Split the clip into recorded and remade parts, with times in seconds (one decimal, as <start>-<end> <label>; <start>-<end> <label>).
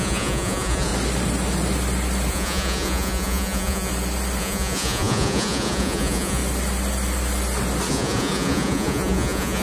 0.0-0.9 remade; 0.9-2.3 recorded; 2.3-3.9 remade; 3.9-4.4 recorded; 4.4-6.4 remade; 6.4-7.9 recorded; 7.9-9.6 remade